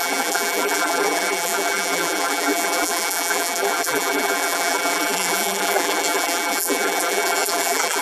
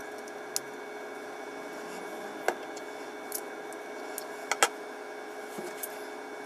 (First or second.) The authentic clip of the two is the second